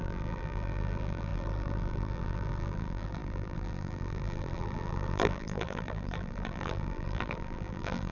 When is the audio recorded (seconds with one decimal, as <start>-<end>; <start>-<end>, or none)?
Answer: none